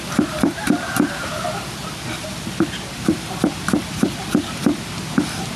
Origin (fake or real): fake